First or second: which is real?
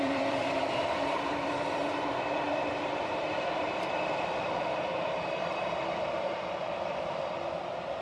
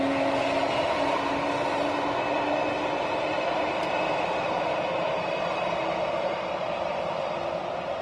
second